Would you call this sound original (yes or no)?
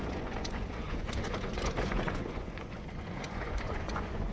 no